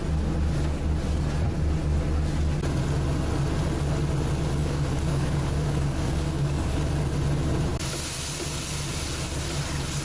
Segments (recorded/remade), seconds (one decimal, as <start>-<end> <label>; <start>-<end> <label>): 0.0-4.6 recorded; 4.6-6.9 remade; 6.9-10.0 recorded

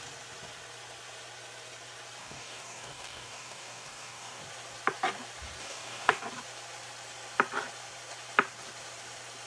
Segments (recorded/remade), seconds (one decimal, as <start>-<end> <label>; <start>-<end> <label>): 0.0-2.2 recorded; 2.2-4.4 remade; 4.4-5.6 recorded; 5.6-6.2 remade; 6.2-9.5 recorded

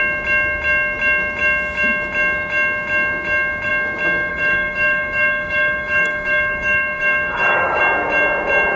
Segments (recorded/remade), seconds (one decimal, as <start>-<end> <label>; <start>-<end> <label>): 0.0-4.3 recorded; 4.3-7.8 remade; 7.8-8.8 recorded

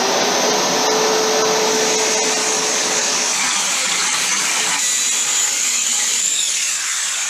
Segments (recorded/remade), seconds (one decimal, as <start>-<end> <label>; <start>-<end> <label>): 0.0-2.4 recorded; 2.4-4.8 remade; 4.8-5.4 recorded; 5.4-7.3 remade

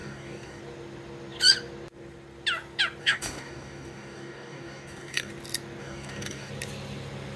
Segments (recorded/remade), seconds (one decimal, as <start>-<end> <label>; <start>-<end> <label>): 0.0-0.6 remade; 0.6-3.0 recorded; 3.0-5.3 remade; 5.3-5.8 recorded; 5.8-6.5 remade; 6.5-7.4 recorded

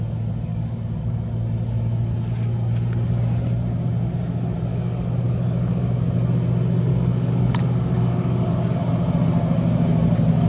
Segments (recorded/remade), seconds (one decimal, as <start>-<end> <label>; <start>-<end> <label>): 0.0-0.5 recorded; 0.5-1.2 remade; 1.2-4.7 recorded; 4.7-6.0 remade; 6.0-6.9 recorded; 6.9-8.5 remade; 8.5-10.5 recorded

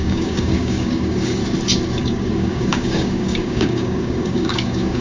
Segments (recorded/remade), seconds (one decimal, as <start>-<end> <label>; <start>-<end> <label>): 0.0-1.4 remade; 1.4-2.0 recorded; 2.0-5.0 remade

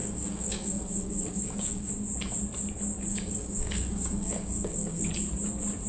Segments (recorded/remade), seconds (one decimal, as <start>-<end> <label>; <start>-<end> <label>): 0.0-1.9 remade; 1.9-3.1 recorded; 3.1-5.1 remade; 5.1-5.9 recorded